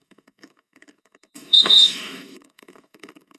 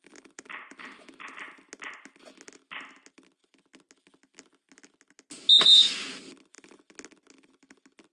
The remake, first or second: first